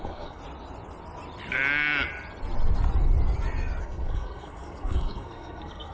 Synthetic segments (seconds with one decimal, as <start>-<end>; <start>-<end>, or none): 0.0-0.4; 3.8-5.9